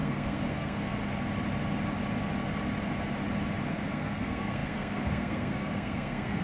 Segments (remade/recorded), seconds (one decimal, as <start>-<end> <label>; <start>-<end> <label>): 0.0-1.0 remade; 1.0-3.7 recorded; 3.7-6.4 remade